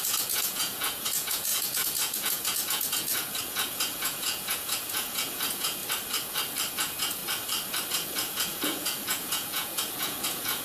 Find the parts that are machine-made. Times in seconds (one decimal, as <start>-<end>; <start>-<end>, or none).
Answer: 0.0-5.8; 6.7-7.2; 7.9-10.6